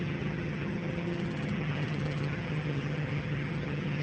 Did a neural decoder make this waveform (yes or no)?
yes